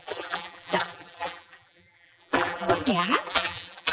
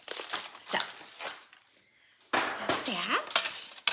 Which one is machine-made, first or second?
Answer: first